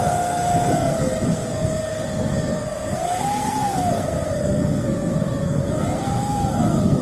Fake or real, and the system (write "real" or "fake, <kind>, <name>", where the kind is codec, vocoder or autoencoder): fake, codec, SNAC